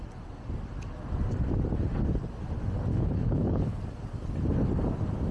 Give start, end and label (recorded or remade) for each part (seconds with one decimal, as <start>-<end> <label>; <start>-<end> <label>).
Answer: 0.0-2.9 recorded; 2.9-3.8 remade; 3.8-5.3 recorded